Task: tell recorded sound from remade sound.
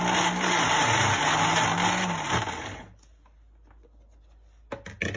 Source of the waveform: recorded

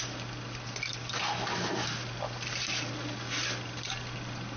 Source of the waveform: recorded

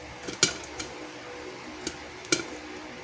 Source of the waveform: recorded